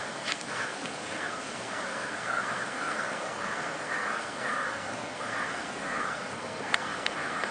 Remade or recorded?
remade